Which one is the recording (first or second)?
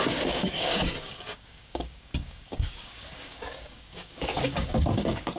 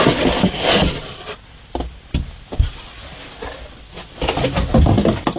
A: second